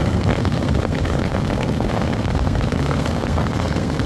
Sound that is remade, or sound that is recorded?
remade